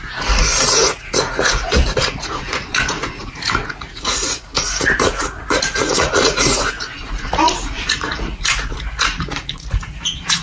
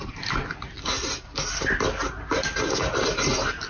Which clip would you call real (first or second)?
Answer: second